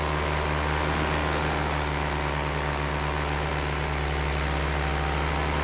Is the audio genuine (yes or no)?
yes